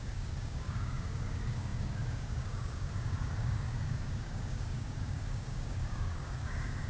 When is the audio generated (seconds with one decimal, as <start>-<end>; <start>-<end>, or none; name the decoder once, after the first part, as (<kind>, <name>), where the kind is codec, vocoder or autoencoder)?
0.0-6.9 (codec, DAC)